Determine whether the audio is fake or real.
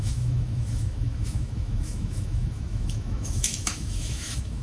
fake